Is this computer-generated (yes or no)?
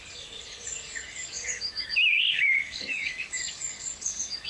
yes